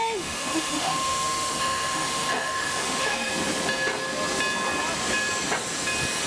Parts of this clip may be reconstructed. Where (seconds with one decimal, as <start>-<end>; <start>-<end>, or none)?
0.0-3.3